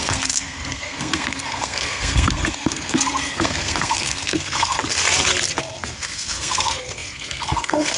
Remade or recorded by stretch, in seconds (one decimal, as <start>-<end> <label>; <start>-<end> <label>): 0.0-4.8 remade; 4.8-5.6 recorded; 5.6-8.0 remade